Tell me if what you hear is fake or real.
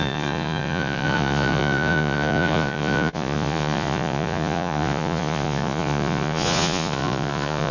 fake